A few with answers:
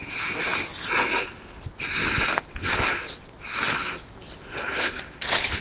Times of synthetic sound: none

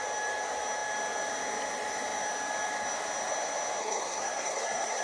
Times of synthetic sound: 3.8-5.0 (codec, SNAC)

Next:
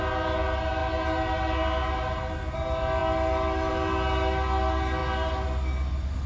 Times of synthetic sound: none